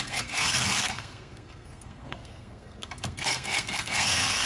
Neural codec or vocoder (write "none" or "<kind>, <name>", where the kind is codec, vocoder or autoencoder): codec, SNAC